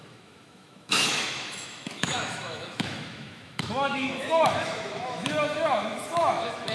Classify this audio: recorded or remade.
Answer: remade